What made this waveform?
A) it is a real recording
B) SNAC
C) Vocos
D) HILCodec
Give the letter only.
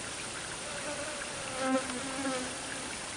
A